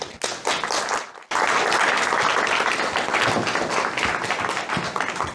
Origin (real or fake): real